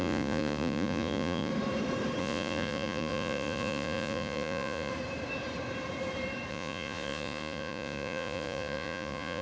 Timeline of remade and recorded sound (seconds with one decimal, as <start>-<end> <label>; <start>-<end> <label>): 0.0-1.5 remade; 1.5-2.2 recorded; 2.2-4.9 remade; 4.9-6.5 recorded; 6.5-9.4 remade